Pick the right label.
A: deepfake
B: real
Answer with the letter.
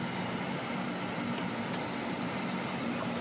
B